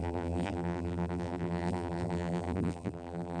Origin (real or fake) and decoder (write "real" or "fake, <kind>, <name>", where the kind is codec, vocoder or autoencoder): fake, vocoder, BigVGAN v2